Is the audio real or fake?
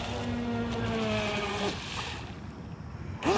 real